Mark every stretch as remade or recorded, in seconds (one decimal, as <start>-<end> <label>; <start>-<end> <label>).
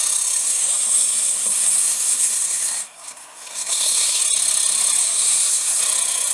0.0-0.4 recorded; 0.4-4.2 remade; 4.2-5.0 recorded; 5.0-5.8 remade; 5.8-6.3 recorded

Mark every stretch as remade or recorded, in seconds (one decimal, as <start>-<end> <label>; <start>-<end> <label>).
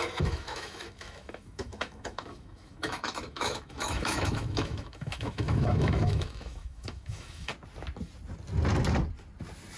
0.0-7.5 remade; 7.5-9.8 recorded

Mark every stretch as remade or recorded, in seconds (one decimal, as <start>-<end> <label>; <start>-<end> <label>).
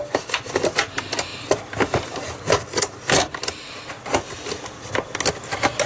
0.0-5.9 recorded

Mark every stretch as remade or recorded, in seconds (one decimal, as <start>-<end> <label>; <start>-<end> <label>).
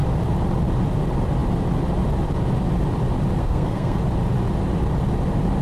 0.0-3.4 recorded; 3.4-4.0 remade; 4.0-5.6 recorded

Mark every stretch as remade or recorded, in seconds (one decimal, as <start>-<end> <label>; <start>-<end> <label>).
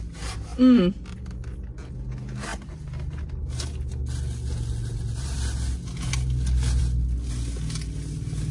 0.0-8.5 recorded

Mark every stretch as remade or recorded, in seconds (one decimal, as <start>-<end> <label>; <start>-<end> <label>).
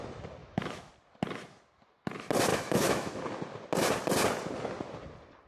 0.0-0.4 recorded; 0.4-0.9 remade; 0.9-2.5 recorded; 2.5-3.2 remade; 3.2-5.5 recorded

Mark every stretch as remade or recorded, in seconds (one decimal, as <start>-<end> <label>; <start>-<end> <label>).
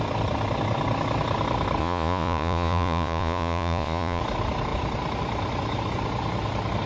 0.0-1.8 recorded; 1.8-4.2 remade; 4.2-6.9 recorded